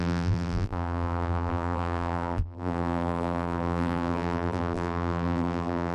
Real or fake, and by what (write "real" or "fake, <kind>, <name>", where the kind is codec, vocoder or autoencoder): fake, vocoder, BigVGAN v2